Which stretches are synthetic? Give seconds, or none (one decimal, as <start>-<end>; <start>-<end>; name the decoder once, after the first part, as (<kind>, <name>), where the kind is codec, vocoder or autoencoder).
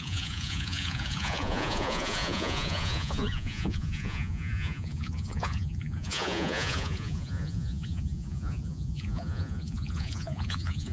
0.0-10.9 (vocoder, Vocos)